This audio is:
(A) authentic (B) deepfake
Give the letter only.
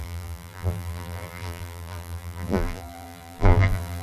B